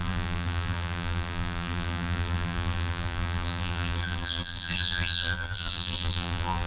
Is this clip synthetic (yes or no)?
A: yes